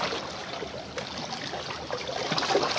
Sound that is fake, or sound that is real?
real